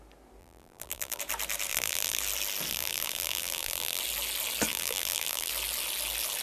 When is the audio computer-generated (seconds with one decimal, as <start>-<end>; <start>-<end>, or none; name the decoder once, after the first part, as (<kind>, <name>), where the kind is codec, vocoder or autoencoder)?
0.4-1.2 (vocoder, BigVGAN v2); 1.7-2.2; 2.7-4.0; 4.7-5.5